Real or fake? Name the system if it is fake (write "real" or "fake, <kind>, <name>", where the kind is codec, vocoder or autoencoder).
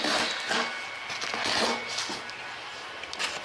real